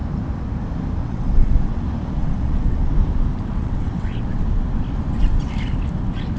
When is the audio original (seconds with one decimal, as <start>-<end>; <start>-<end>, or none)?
0.0-1.0; 1.8-2.2; 2.9-3.5; 4.4-6.4